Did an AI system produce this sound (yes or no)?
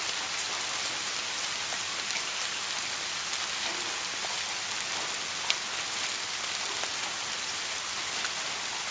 no